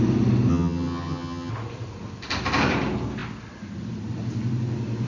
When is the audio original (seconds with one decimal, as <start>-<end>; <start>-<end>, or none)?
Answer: 0.0-0.5; 1.5-5.1